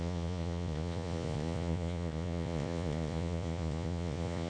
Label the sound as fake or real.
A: fake